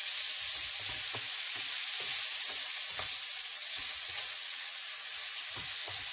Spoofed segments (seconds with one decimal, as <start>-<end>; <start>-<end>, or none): 3.5-4.8